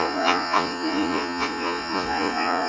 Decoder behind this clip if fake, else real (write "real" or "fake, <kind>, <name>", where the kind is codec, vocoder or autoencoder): fake, vocoder, Vocos